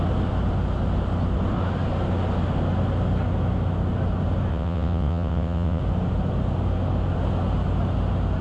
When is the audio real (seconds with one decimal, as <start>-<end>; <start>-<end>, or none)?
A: 0.0-4.5; 5.8-8.4

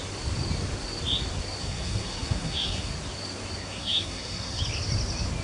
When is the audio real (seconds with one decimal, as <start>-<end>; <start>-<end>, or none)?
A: 0.0-1.6; 2.9-3.6; 4.6-5.4

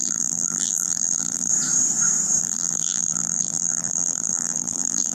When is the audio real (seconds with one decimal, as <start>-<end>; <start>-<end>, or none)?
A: 1.5-2.4

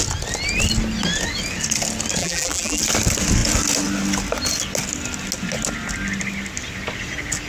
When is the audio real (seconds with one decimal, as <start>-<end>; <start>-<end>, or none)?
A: 0.0-2.2; 2.8-7.5